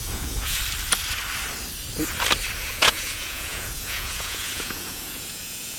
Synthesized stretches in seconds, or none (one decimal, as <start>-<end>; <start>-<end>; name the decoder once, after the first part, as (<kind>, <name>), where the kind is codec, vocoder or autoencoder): 0.0-0.6 (vocoder, Vocos); 2.7-5.8